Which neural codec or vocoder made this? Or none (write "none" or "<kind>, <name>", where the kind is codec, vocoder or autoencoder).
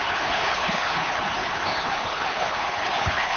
codec, HILCodec